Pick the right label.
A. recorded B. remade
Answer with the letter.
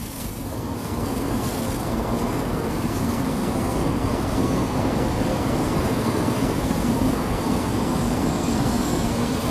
B